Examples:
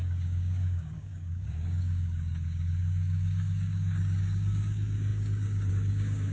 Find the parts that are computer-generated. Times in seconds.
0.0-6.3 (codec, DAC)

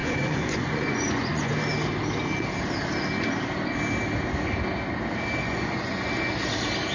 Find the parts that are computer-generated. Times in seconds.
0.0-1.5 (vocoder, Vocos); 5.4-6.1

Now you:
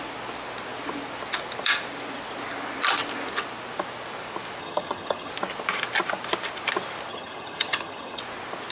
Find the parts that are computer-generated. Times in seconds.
4.6-5.3 (vocoder, HiFi-GAN); 7.1-8.2

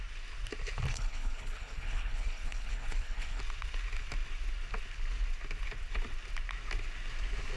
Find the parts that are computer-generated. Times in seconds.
0.9-3.4 (codec, HILCodec)

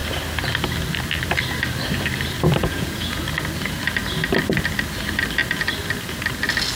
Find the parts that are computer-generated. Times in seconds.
2.6-3.2 (vocoder, Vocos)

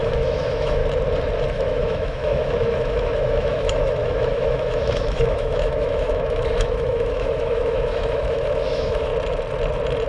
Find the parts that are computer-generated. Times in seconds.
0.0-0.8 (autoencoder, DAC-VAE); 1.5-9.1

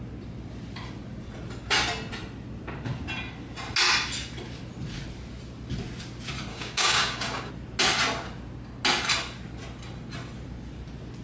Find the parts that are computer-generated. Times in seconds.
6.5-7.5 (codec, DAC)